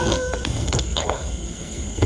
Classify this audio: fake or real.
fake